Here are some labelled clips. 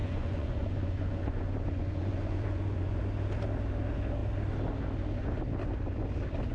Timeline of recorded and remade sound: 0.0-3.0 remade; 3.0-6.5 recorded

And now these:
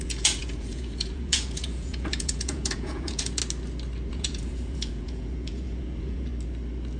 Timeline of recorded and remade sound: 0.0-3.4 remade; 3.4-4.1 recorded; 4.1-6.3 remade; 6.3-7.0 recorded

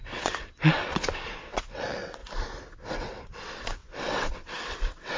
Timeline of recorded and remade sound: 0.0-2.2 remade; 2.2-2.9 recorded; 2.9-5.2 remade

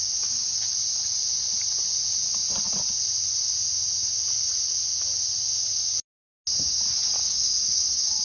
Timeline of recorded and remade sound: 0.0-7.2 recorded; 7.2-8.2 remade

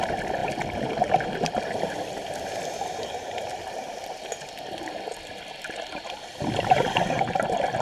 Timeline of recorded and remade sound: 0.0-0.4 recorded; 0.4-4.5 remade; 4.5-7.8 recorded